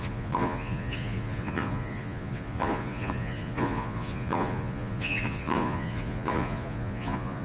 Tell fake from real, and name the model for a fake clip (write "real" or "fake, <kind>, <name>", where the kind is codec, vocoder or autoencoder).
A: fake, vocoder, Vocos